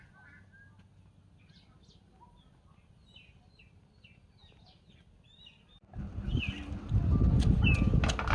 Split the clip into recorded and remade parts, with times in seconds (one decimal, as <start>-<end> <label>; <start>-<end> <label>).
0.0-8.3 recorded